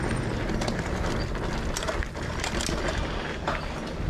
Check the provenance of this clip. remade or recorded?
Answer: recorded